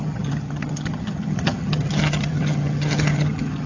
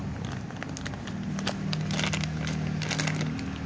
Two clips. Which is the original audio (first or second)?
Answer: second